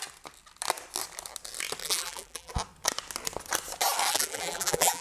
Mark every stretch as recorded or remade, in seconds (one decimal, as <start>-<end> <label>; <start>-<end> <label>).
0.0-1.8 recorded; 1.8-2.5 remade; 2.5-4.1 recorded; 4.1-5.0 remade